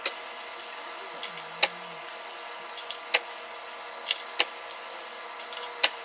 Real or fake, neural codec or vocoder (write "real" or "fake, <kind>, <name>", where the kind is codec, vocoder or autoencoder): real